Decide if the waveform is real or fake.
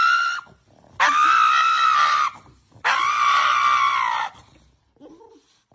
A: real